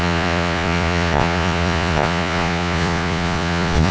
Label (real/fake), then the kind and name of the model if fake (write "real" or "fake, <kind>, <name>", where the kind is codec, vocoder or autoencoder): fake, vocoder, Vocos